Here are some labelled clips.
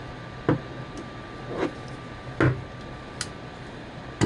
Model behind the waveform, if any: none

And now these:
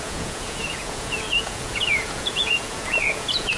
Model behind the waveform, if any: vocoder, Vocos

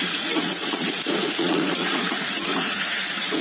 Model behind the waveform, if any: vocoder, Vocos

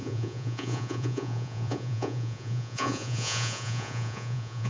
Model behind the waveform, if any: vocoder, Vocos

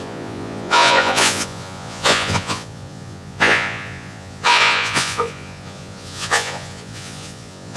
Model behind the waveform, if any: vocoder, Vocos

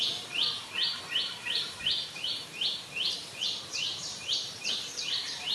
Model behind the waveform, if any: vocoder, BigVGAN v2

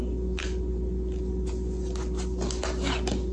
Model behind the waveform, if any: none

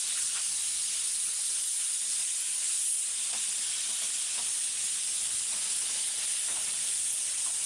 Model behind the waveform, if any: none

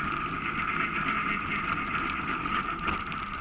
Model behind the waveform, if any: vocoder, BigVGAN v2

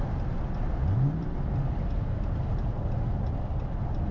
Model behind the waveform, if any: none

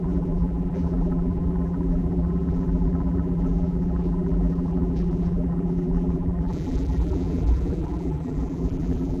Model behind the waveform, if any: vocoder, BigVGAN v2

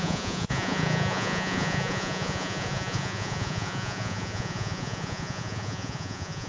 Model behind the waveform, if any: vocoder, Vocos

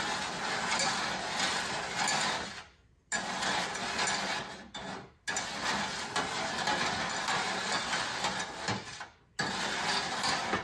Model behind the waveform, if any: none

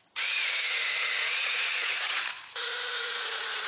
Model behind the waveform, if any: vocoder, Vocos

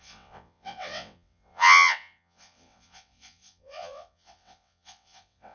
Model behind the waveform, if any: vocoder, WaveNeXt